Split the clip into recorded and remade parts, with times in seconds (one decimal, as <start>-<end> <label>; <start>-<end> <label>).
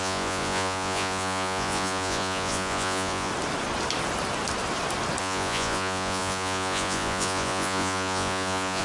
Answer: 0.0-3.3 remade; 3.3-5.2 recorded; 5.2-8.8 remade